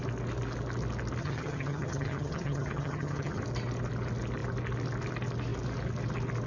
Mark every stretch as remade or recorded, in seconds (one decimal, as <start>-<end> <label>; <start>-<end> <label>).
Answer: 0.0-1.2 recorded; 1.2-3.4 remade; 3.4-6.5 recorded